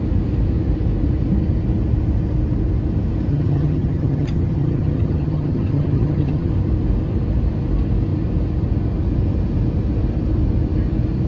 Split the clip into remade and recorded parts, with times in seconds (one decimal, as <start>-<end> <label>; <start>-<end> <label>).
0.0-3.3 recorded; 3.3-6.5 remade; 6.5-11.3 recorded